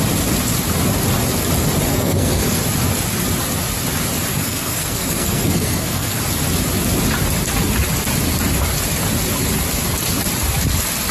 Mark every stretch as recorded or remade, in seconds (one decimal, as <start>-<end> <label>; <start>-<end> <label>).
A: 0.0-1.9 recorded; 1.9-2.6 remade; 2.6-4.3 recorded; 4.3-6.2 remade; 6.2-11.1 recorded